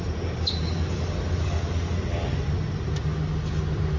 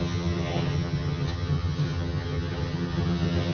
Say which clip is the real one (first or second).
first